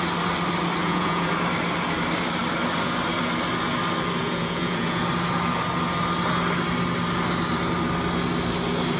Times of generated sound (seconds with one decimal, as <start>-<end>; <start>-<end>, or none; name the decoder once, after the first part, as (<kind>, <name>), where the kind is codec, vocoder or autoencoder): 0.8-1.3 (vocoder, Vocos); 4.2-5.0